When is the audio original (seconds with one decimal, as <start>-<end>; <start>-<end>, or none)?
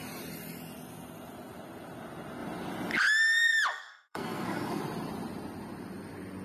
0.0-3.7; 4.8-6.4